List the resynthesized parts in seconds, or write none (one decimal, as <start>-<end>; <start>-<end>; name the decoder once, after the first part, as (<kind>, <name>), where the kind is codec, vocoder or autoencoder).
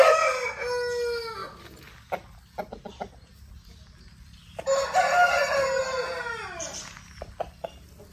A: none